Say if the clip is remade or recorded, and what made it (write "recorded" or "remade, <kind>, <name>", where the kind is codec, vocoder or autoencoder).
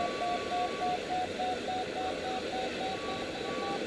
recorded